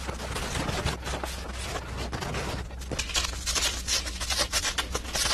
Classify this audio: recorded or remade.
recorded